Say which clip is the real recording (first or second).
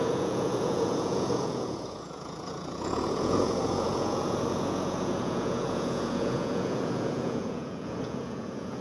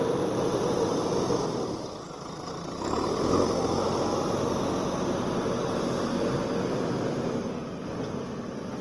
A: second